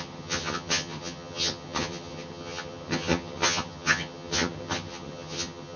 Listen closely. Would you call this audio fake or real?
fake